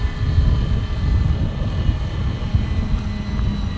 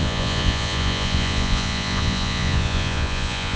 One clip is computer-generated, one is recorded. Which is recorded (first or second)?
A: first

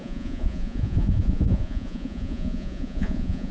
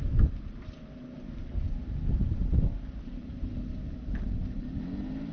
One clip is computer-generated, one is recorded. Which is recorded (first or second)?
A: second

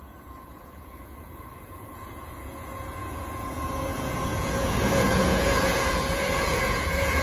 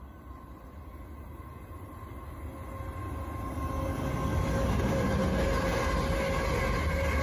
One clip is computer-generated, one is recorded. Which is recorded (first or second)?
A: second